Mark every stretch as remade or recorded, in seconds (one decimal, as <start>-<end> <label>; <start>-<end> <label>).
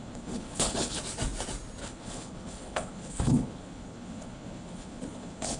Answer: 0.0-1.0 remade; 1.0-1.8 recorded; 1.8-5.6 remade